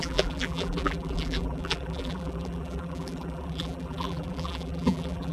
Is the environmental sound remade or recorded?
remade